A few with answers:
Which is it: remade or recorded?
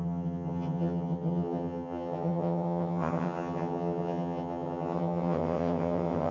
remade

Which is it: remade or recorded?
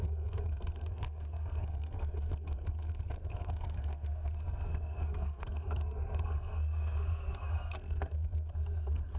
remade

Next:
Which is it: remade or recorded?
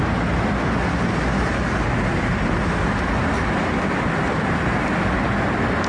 recorded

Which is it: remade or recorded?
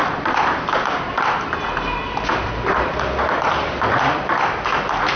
remade